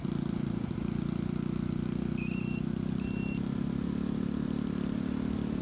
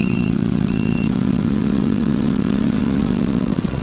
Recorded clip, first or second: first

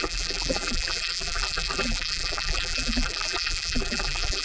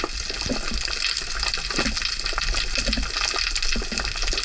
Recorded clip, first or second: second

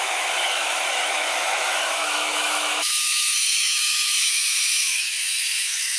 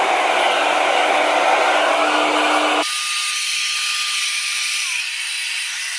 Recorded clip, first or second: second